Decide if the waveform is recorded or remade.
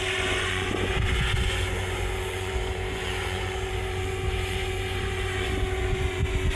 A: remade